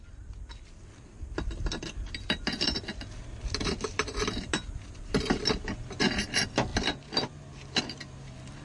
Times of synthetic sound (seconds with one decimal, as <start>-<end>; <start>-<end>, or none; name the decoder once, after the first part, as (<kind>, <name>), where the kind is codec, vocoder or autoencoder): none